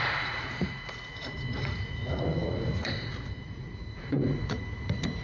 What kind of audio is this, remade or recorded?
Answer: remade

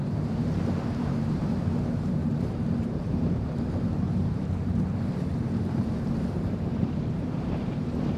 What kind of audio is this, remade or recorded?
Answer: remade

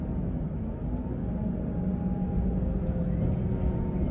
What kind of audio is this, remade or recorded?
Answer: recorded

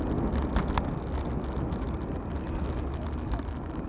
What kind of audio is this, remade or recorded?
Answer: recorded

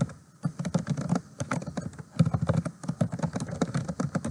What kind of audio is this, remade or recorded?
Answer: recorded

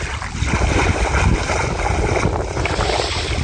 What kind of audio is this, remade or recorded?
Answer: recorded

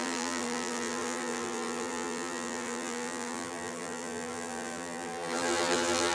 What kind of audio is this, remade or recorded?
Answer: remade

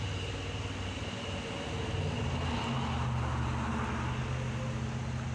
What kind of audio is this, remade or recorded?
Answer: recorded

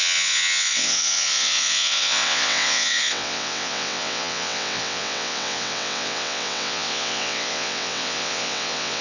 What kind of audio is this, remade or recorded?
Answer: remade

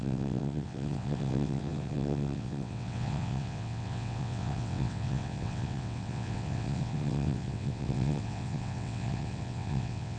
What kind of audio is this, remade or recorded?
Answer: remade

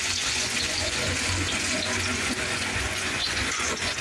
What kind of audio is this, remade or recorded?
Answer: remade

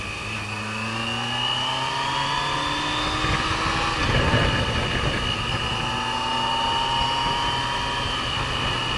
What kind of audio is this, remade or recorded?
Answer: recorded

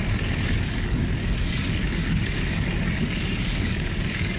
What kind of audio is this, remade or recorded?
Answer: remade